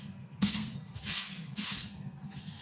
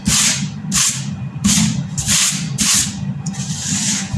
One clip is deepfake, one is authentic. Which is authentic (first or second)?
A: second